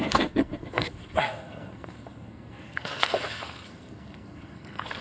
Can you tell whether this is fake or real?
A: fake